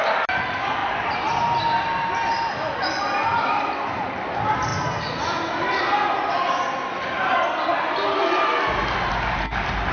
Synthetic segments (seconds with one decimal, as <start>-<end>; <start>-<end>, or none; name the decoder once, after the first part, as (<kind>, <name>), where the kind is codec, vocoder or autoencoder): none